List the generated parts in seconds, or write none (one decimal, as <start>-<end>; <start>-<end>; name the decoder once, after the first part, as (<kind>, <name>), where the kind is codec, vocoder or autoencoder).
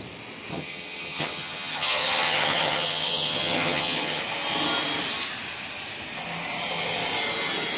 0.5-4.2 (vocoder, HiFi-GAN)